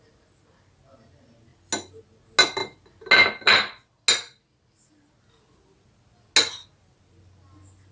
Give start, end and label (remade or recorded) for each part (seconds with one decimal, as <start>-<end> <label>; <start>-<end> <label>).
0.0-7.9 recorded